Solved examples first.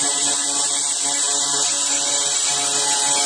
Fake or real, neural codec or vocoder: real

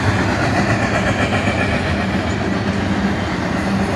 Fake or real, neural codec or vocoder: real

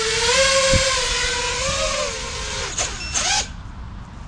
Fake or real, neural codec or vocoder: real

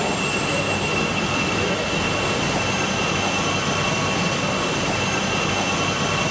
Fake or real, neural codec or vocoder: real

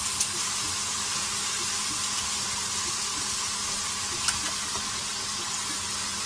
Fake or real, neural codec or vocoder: real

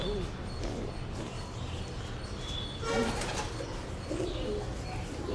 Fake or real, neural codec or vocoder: real